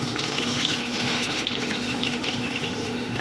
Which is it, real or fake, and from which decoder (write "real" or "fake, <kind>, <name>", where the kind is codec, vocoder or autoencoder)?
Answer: fake, autoencoder, DAC-VAE